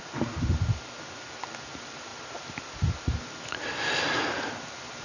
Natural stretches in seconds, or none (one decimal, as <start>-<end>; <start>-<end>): 0.0-5.0